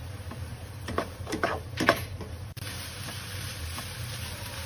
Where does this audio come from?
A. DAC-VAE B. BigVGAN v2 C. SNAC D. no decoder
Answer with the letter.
B